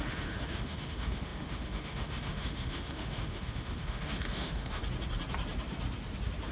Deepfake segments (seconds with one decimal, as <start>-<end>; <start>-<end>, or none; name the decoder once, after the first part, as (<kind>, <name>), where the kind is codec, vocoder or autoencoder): 0.0-4.8 (autoencoder, DAC-VAE)